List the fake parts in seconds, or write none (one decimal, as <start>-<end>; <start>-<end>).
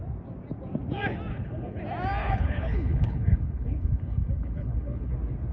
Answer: 1.3-1.8; 2.2-5.1